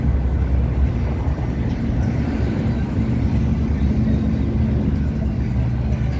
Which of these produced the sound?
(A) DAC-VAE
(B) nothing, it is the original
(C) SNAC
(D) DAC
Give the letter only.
B